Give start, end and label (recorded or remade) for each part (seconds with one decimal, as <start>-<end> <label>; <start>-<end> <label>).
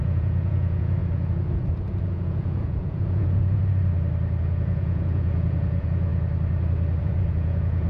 0.0-3.6 remade; 3.6-4.4 recorded; 4.4-6.1 remade; 6.1-7.0 recorded; 7.0-7.9 remade